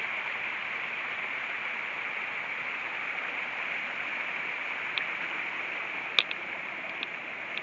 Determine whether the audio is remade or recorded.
recorded